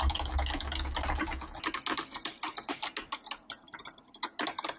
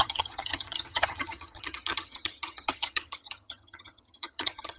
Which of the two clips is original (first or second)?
first